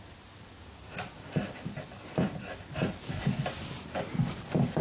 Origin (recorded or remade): recorded